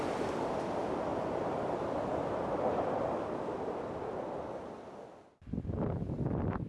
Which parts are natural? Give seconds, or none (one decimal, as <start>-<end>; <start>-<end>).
0.0-6.7